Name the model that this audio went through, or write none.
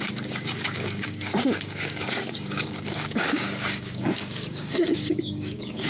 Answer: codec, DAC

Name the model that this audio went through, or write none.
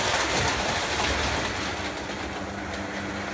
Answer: none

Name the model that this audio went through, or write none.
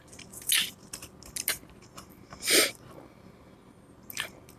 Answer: none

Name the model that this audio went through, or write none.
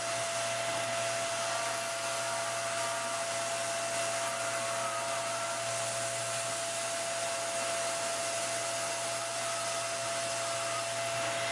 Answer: none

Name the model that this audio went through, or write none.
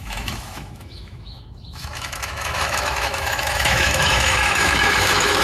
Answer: autoencoder, DAC-VAE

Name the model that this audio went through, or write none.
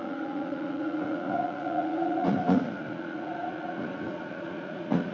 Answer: vocoder, Vocos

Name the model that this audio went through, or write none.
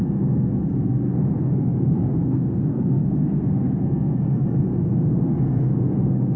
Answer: codec, SNAC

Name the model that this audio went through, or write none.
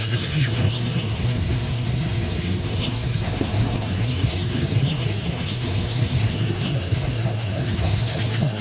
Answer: codec, SNAC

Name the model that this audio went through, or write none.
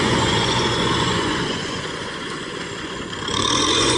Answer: vocoder, Vocos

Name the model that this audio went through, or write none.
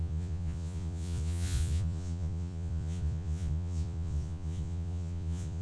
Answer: vocoder, Vocos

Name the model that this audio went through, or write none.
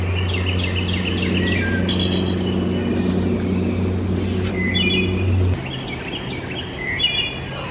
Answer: none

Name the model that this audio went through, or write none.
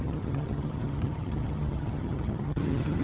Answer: vocoder, HiFi-GAN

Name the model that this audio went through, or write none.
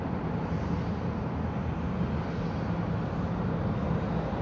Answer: none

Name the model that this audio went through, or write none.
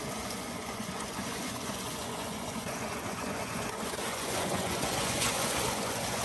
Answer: vocoder, Vocos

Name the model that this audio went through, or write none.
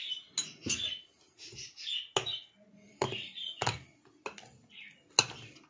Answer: none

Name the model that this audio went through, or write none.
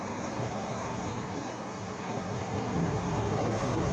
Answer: codec, SNAC